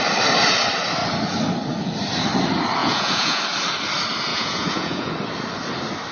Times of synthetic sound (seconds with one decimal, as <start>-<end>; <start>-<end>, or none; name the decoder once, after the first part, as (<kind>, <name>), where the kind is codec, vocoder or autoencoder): 2.8-3.4 (vocoder, Vocos); 4.3-5.1